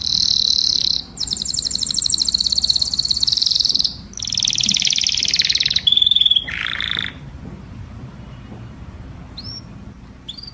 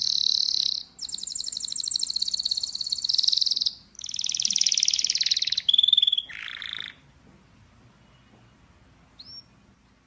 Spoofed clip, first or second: first